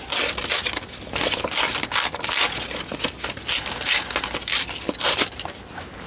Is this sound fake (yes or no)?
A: no